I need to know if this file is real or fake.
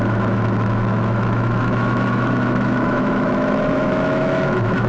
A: fake